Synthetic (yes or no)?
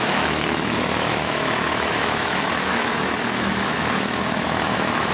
yes